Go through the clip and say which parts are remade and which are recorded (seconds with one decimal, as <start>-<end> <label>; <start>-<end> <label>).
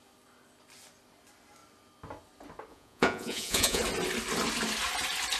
0.0-2.7 recorded; 2.7-3.8 remade; 3.8-5.4 recorded